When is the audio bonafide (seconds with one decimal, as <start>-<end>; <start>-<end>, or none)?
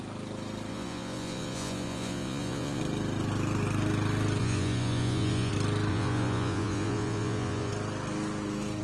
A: 0.0-0.7; 2.8-4.4; 5.5-5.9; 7.7-8.8